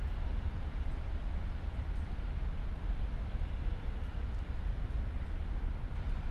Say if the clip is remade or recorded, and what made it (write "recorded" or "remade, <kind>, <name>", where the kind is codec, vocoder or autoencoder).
recorded